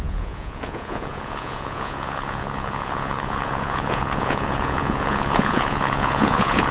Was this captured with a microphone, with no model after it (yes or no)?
no